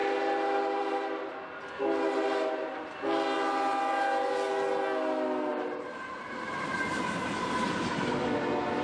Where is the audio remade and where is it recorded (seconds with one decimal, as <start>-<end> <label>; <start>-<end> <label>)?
0.0-5.5 recorded; 5.5-8.0 remade; 8.0-8.8 recorded